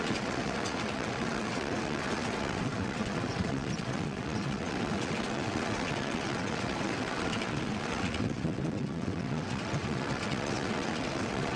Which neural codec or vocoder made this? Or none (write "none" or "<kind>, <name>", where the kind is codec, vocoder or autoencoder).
vocoder, WaveNeXt